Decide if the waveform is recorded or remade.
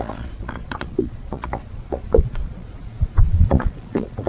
remade